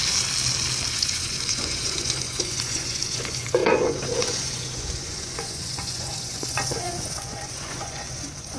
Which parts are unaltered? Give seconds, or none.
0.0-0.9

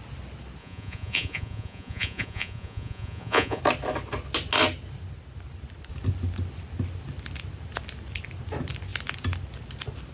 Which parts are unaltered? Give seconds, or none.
0.0-0.6; 3.6-10.1

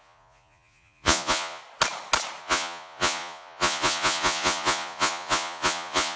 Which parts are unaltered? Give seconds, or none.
1.6-2.4